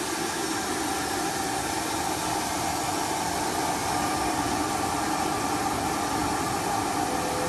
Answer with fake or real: real